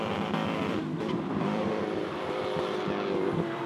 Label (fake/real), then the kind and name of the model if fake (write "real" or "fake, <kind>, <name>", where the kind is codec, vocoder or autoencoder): fake, vocoder, BigVGAN v2